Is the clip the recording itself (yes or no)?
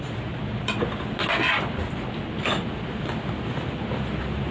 yes